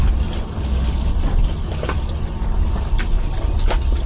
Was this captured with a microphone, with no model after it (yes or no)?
yes